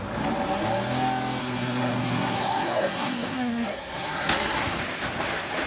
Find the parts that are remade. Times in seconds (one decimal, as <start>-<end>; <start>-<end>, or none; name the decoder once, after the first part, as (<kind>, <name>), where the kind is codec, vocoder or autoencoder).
1.4-4.8 (codec, SNAC)